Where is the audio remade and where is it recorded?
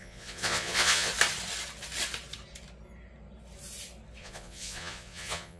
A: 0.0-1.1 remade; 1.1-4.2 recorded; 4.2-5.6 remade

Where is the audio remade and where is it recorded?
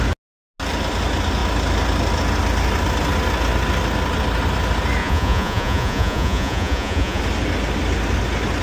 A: 0.0-5.0 recorded; 5.0-7.2 remade; 7.2-8.6 recorded